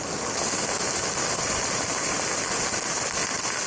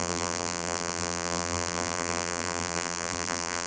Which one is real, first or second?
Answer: first